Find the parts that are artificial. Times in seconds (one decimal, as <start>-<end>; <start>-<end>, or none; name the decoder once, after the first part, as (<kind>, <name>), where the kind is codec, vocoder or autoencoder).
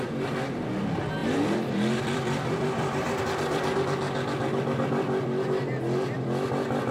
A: 1.2-3.2 (vocoder, BigVGAN v2)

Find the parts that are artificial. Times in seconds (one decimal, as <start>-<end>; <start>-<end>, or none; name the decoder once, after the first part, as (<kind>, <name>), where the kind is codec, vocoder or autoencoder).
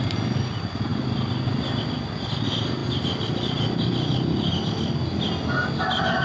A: none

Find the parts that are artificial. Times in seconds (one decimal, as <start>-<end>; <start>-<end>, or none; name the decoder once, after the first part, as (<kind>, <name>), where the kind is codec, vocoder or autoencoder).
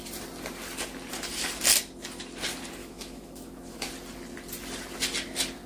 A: 2.8-3.9 (autoencoder, DAC-VAE)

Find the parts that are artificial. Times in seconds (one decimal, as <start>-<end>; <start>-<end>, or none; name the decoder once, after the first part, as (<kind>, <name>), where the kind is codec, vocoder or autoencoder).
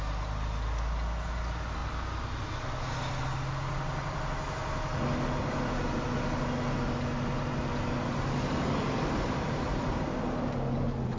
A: none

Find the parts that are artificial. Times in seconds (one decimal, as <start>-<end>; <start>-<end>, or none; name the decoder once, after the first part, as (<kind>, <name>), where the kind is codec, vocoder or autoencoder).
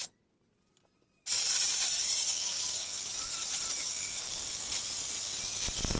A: 2.0-3.1 (codec, DAC); 3.8-4.6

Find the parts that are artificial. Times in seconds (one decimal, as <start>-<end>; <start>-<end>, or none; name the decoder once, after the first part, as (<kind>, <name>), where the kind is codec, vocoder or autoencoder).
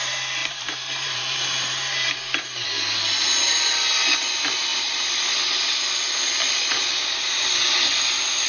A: 0.4-2.1 (vocoder, BigVGAN v2); 4.7-5.3